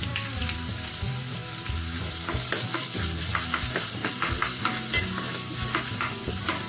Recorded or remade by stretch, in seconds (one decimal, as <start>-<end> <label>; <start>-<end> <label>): 0.0-4.0 remade; 4.0-6.3 recorded; 6.3-6.7 remade